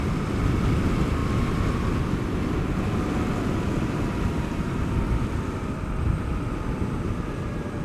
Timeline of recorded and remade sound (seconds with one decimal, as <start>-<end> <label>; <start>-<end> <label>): 0.0-1.2 remade; 1.2-3.9 recorded; 3.9-7.8 remade

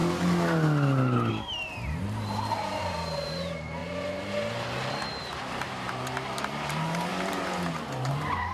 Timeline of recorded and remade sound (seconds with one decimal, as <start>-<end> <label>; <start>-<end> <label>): 0.0-1.3 recorded; 1.3-3.8 remade; 3.8-4.9 recorded; 4.9-7.1 remade; 7.1-8.1 recorded; 8.1-8.5 remade